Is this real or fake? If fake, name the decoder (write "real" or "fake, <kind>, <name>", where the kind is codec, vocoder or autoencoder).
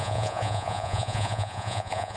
fake, vocoder, Vocos